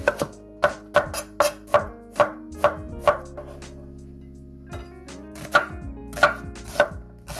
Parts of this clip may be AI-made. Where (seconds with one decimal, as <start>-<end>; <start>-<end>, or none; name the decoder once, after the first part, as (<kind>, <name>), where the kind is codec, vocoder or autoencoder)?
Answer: none